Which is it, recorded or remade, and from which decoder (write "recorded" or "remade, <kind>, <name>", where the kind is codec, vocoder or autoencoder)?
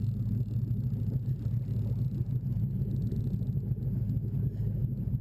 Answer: recorded